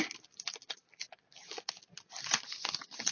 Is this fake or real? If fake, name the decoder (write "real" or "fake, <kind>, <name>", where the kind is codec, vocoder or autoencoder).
real